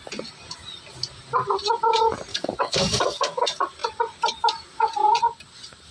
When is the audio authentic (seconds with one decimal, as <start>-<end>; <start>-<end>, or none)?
0.0-2.3; 3.4-5.9